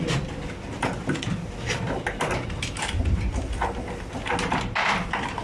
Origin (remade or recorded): recorded